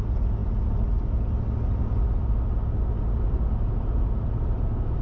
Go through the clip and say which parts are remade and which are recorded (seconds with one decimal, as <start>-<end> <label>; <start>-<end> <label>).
0.0-5.0 recorded